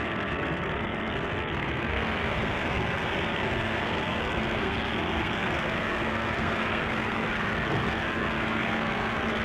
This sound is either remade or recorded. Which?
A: remade